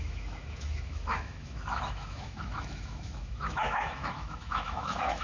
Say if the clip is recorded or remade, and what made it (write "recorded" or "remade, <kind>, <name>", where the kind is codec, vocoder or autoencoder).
remade, autoencoder, DAC-VAE